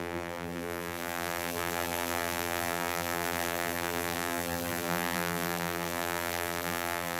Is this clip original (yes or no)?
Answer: no